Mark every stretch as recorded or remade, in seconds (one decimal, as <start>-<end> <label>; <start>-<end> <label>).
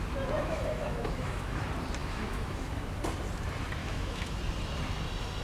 0.0-0.4 recorded; 0.4-1.6 remade; 1.6-2.0 recorded; 2.0-2.7 remade; 2.7-3.8 recorded; 3.8-4.4 remade; 4.4-5.4 recorded